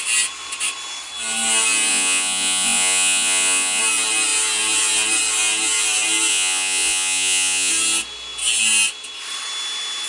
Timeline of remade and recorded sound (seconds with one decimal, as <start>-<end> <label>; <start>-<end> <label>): 0.0-1.9 recorded; 1.9-3.8 remade; 3.8-6.3 recorded; 6.3-7.7 remade; 7.7-10.1 recorded